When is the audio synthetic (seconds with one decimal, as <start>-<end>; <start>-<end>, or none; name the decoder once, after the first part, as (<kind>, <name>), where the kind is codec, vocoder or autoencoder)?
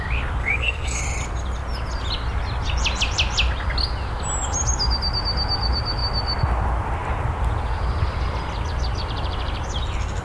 0.4-1.0 (codec, SNAC)